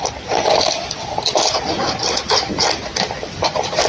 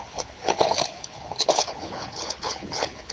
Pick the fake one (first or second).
second